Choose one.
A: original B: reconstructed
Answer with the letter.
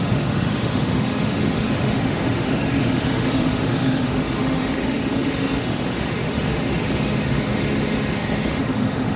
B